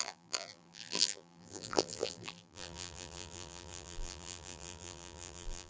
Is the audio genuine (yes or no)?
no